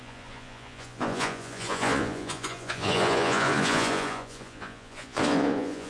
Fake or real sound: fake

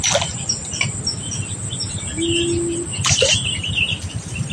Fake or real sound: real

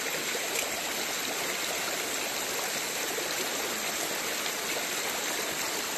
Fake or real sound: real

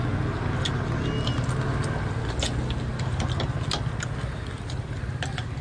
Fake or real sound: real